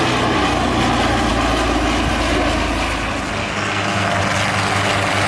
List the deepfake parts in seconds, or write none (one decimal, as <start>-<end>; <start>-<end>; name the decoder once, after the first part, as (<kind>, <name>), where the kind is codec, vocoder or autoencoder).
3.4-4.2 (codec, SNAC)